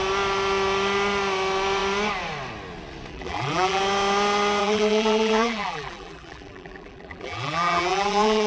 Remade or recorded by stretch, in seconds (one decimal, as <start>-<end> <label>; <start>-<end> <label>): 0.0-3.1 recorded; 3.1-3.8 remade; 3.8-4.6 recorded; 4.6-8.5 remade